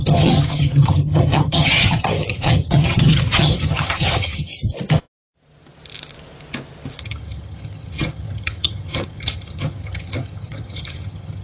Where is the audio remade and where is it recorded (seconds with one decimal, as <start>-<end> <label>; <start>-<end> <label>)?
0.0-4.5 remade; 4.5-7.0 recorded; 7.0-11.4 remade